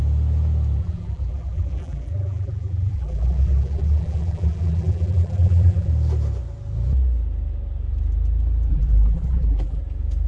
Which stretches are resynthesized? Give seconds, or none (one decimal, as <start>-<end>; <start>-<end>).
0.8-5.9; 8.7-9.8

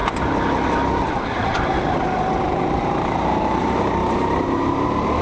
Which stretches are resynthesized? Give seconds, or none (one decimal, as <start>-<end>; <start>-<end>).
2.5-5.2

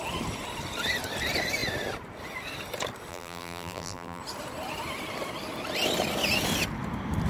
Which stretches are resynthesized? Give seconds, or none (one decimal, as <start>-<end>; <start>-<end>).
3.1-4.2

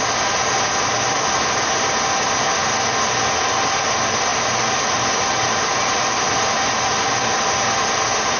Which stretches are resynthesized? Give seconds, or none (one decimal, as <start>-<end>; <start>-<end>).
none

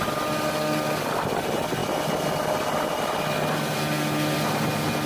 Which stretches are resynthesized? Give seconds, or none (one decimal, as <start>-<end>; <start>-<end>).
none

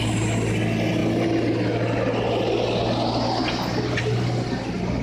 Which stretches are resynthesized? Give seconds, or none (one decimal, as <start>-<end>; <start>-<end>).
none

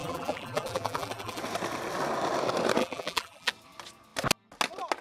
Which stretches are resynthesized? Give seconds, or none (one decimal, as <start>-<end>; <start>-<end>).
0.0-1.4; 2.8-3.5